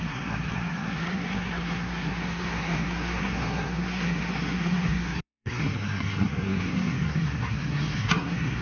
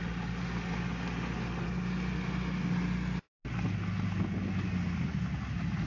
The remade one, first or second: first